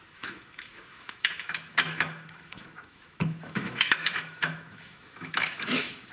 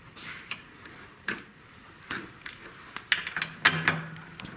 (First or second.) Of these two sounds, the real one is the second